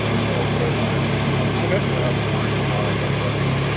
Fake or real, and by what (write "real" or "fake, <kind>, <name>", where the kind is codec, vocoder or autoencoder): real